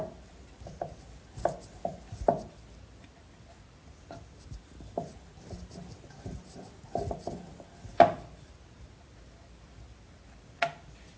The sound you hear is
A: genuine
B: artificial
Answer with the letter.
A